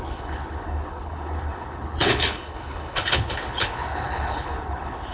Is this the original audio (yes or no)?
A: no